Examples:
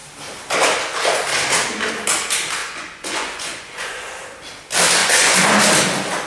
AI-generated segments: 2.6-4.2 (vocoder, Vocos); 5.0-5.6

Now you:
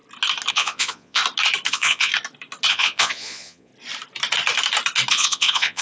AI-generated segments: 0.5-1.2 (vocoder, Vocos); 1.7-2.1; 2.7-3.7; 5.1-5.8

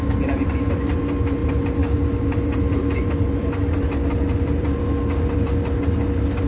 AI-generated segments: none

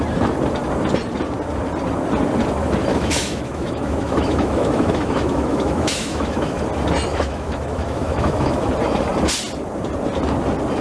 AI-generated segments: 2.9-6.6 (autoencoder, DAC-VAE); 7.1-8.7

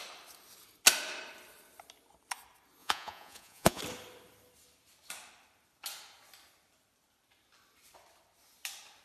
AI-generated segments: 2.8-3.8 (vocoder, Vocos)

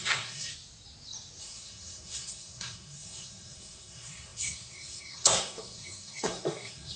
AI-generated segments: 0.0-0.5 (codec, SNAC); 1.4-7.0